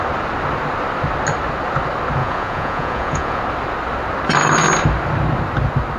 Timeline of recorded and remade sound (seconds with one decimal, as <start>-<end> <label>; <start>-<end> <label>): 0.0-2.2 recorded; 2.2-3.4 remade; 3.4-6.0 recorded